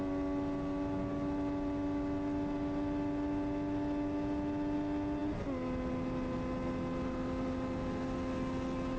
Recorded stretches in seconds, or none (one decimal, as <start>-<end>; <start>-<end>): 0.0-9.0